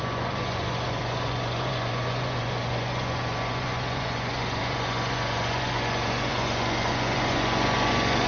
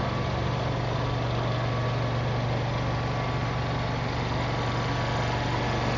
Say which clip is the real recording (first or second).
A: second